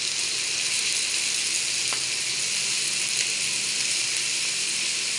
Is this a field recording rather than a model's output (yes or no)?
yes